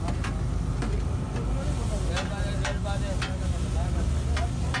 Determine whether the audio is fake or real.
real